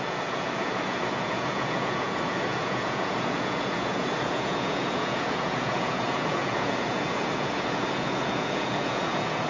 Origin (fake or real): fake